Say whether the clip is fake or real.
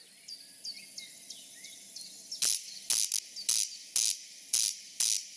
real